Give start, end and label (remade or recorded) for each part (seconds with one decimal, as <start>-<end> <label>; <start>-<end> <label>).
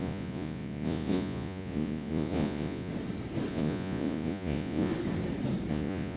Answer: 0.0-2.9 remade; 2.9-3.5 recorded; 3.5-4.9 remade; 4.9-5.7 recorded; 5.7-6.2 remade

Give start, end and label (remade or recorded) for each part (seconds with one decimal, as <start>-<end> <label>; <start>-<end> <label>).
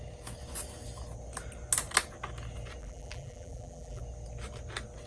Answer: 0.0-2.8 recorded; 2.8-4.0 remade; 4.0-5.1 recorded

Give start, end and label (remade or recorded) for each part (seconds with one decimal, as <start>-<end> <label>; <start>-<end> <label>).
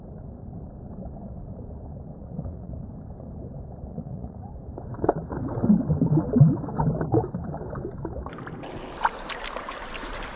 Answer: 0.0-2.2 recorded; 2.2-2.7 remade; 2.7-3.9 recorded; 3.9-4.5 remade; 4.5-10.4 recorded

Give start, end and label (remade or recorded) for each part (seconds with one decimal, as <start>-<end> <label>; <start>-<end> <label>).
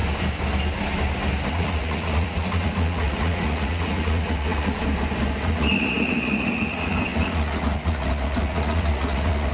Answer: 0.0-1.5 recorded; 1.5-4.8 remade; 4.8-5.4 recorded; 5.4-9.5 remade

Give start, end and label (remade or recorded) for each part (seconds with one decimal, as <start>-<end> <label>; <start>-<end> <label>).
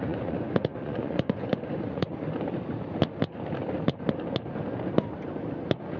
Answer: 0.0-2.1 remade; 2.1-6.0 recorded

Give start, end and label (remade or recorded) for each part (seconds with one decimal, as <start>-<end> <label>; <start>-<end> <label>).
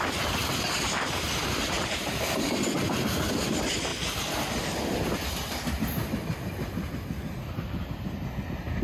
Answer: 0.0-8.8 recorded